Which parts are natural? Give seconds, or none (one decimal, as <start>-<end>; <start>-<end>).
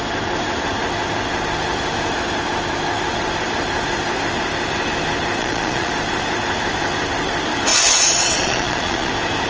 0.0-5.4; 5.9-7.7; 9.1-9.5